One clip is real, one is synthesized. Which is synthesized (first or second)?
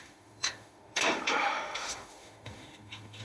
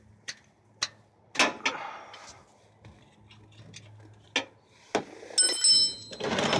first